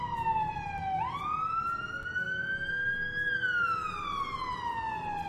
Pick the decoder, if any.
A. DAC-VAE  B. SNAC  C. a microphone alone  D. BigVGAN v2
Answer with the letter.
C